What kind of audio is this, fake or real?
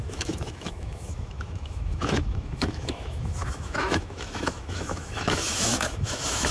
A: fake